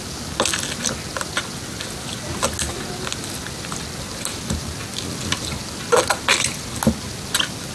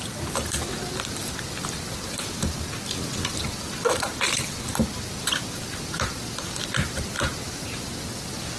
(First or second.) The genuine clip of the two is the first